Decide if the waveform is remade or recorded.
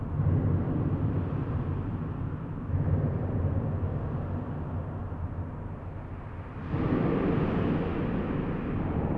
recorded